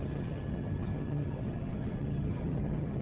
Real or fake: fake